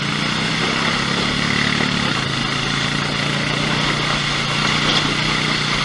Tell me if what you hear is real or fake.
real